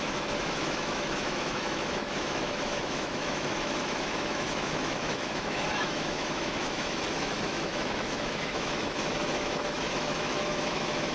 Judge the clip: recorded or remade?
remade